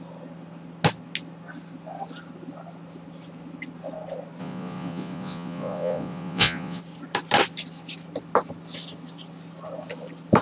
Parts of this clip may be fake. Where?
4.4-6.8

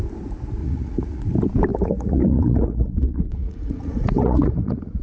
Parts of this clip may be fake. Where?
0.6-1.2; 1.7-5.0